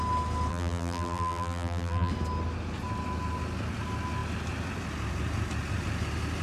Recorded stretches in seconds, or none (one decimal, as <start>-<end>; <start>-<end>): 0.0-0.5; 2.1-6.4